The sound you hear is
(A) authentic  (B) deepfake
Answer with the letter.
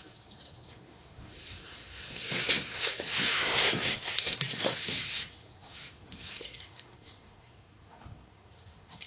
B